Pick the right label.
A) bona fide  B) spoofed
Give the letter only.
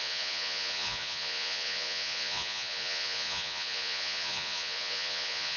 B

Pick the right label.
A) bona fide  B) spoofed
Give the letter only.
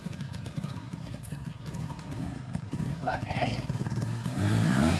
B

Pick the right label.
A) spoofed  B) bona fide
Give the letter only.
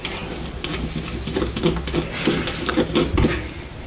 B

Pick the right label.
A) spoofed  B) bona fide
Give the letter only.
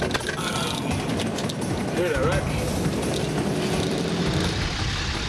B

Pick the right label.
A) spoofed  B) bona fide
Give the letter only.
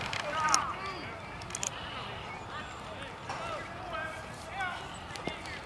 B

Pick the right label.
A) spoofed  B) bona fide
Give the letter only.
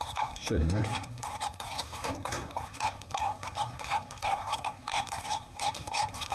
A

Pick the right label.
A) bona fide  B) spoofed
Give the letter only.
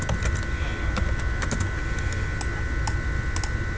A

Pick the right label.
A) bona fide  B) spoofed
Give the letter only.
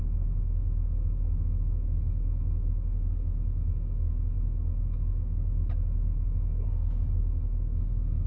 B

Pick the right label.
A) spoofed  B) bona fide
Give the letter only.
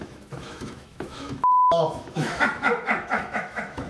A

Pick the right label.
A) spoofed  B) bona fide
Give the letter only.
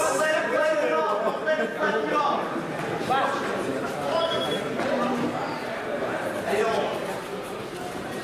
A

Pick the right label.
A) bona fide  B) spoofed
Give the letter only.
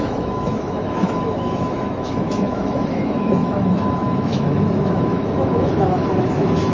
B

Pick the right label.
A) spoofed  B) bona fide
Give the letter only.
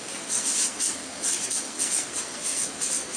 A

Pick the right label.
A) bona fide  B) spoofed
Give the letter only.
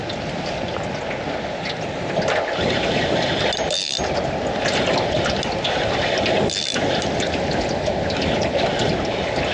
A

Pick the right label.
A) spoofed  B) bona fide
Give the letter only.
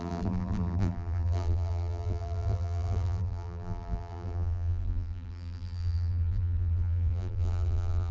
A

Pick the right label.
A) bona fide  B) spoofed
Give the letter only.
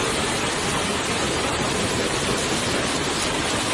A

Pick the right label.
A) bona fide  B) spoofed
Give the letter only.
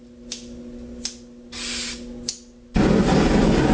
A